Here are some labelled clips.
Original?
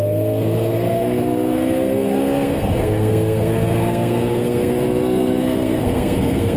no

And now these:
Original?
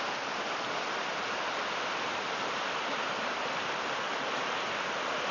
yes